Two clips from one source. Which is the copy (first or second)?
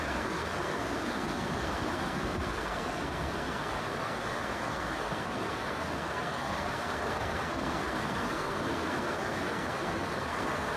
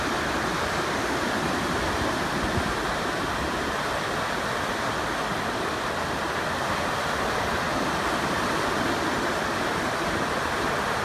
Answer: first